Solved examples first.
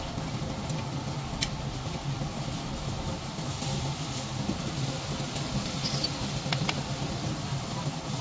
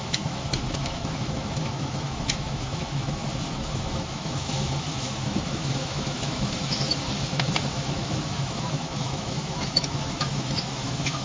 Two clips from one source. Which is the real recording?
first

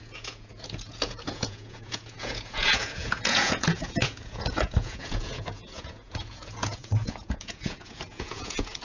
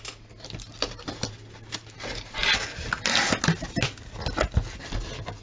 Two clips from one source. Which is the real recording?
second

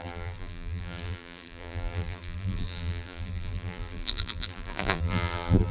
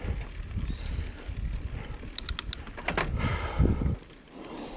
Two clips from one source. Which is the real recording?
second